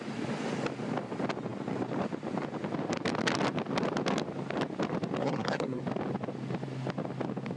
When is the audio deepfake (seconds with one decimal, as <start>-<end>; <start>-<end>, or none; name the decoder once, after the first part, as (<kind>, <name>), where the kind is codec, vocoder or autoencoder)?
5.2-5.8 (codec, SNAC)